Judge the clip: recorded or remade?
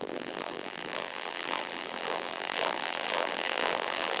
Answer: remade